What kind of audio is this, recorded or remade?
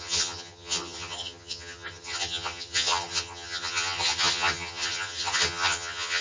remade